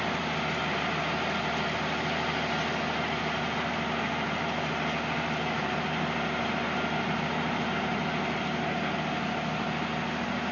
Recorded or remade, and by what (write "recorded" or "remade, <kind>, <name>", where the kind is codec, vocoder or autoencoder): recorded